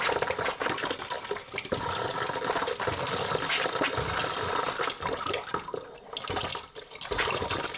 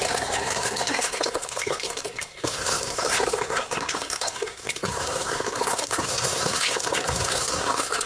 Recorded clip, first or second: first